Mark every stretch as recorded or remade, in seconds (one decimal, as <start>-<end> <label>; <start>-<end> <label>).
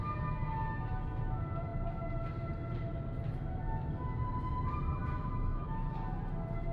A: 0.0-0.4 recorded; 0.4-1.0 remade; 1.0-5.0 recorded; 5.0-5.9 remade; 5.9-6.7 recorded